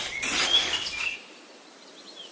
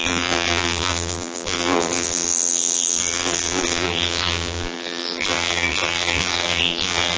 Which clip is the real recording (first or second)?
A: first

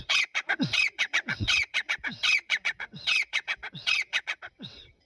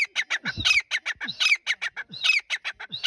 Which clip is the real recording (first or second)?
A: second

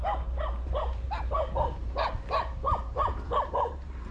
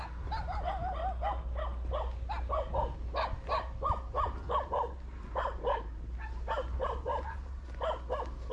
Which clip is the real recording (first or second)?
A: second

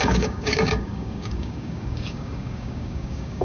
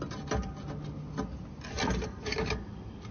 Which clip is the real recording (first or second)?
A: second